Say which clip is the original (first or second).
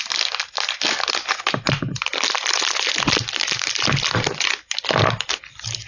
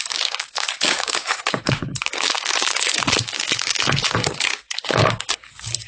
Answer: first